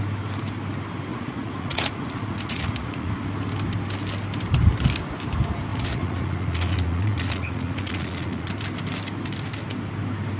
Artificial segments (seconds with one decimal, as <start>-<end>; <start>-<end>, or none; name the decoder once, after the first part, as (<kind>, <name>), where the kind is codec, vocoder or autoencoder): 1.1-3.1 (vocoder, Vocos); 5.7-8.5

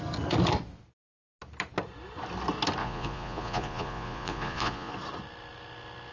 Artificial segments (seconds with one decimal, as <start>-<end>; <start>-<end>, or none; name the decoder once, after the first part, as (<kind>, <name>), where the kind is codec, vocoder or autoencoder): 2.8-4.9 (vocoder, Vocos)